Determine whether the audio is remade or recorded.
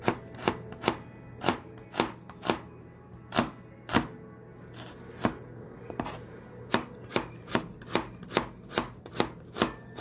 recorded